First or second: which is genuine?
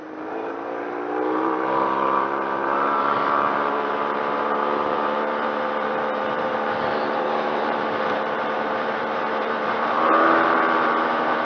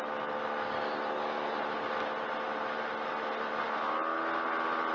second